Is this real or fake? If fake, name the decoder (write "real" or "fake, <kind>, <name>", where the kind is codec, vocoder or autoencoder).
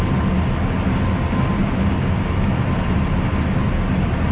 real